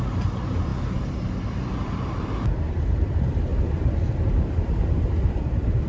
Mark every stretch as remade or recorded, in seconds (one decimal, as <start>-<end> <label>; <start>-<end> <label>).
0.0-0.7 remade; 0.7-1.8 recorded; 1.8-3.5 remade; 3.5-5.0 recorded; 5.0-5.9 remade